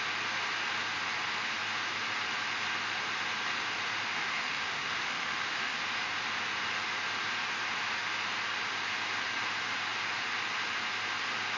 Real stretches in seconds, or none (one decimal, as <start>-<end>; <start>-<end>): 0.0-4.2; 5.8-11.6